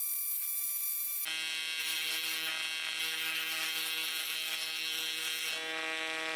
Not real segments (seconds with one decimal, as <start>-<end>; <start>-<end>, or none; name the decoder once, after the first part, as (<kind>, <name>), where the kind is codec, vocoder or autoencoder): 1.8-2.5 (codec, SNAC); 3.0-5.5